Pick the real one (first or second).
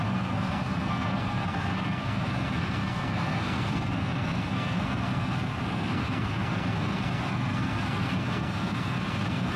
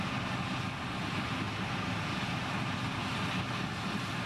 second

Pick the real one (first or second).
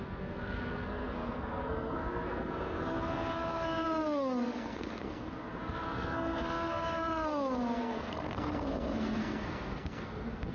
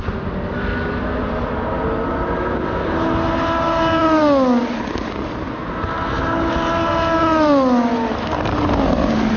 second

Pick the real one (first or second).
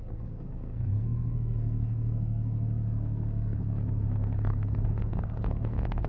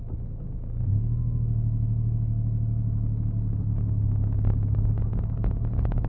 second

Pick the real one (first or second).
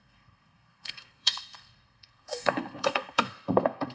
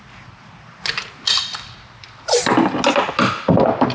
second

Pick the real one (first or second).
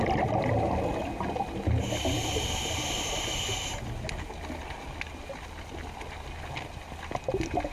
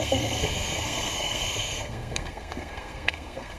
first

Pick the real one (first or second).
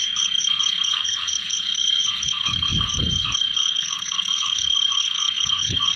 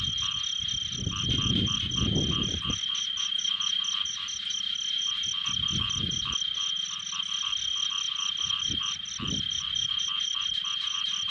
second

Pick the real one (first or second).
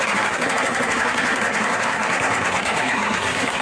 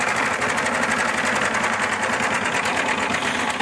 second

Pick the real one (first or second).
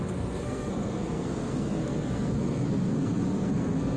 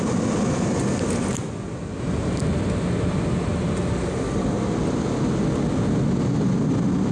second